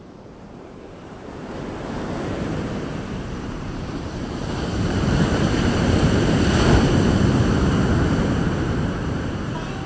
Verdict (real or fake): fake